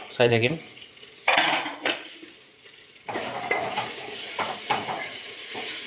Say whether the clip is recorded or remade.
remade